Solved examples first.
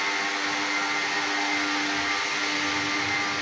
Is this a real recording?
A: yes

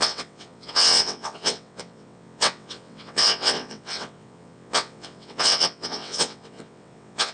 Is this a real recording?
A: no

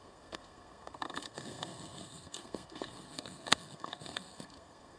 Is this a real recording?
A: no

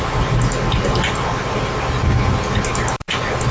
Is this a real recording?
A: yes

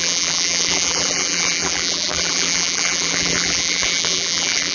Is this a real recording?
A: no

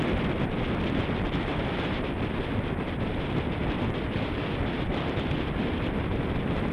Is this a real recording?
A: yes